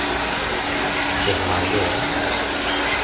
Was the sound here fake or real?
real